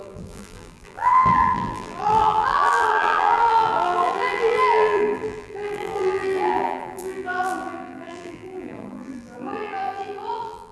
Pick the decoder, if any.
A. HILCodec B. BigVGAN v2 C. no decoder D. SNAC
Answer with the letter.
B